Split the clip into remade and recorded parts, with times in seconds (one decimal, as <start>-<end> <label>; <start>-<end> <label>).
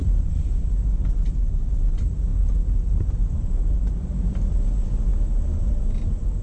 0.0-0.6 remade; 0.6-6.4 recorded